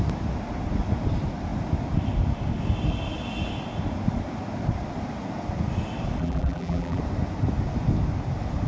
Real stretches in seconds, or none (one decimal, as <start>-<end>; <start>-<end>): 0.0-6.2; 7.0-8.7